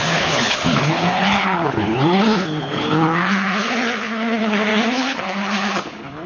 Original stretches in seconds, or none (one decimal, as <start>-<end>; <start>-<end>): none